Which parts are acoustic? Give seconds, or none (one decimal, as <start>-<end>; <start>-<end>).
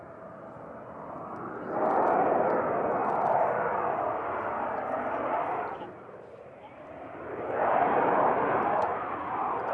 0.0-5.5; 8.2-9.7